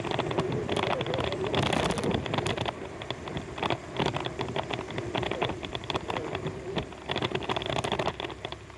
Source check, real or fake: real